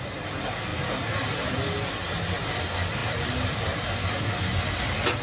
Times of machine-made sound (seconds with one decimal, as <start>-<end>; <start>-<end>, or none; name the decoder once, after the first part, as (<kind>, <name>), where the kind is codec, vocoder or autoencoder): 3.0-3.6 (vocoder, BigVGAN v2)